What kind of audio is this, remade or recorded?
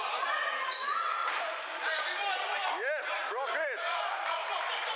recorded